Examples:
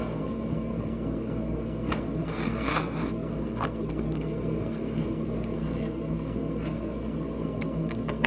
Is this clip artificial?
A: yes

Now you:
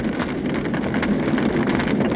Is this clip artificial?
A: no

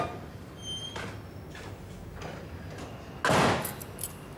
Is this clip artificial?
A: no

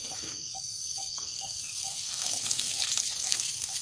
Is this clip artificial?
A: yes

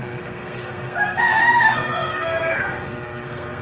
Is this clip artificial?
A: yes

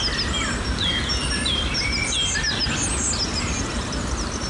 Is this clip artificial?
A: no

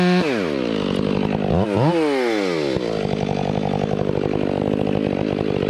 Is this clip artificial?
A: no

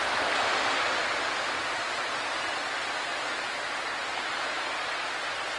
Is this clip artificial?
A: no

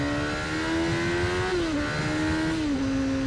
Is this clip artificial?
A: no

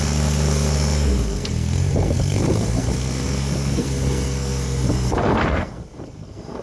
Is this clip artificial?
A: yes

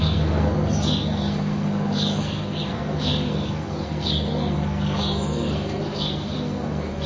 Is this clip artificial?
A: yes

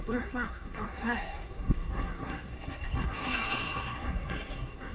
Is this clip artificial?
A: yes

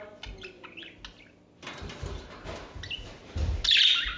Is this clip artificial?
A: no